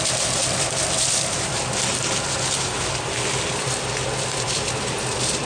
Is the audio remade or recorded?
remade